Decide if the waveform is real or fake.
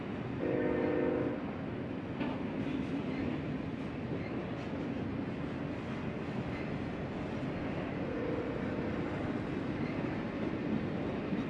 real